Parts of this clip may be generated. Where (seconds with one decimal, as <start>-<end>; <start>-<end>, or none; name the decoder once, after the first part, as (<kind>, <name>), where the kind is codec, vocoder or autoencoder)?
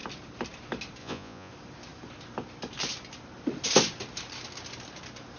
1.0-1.5 (vocoder, Vocos)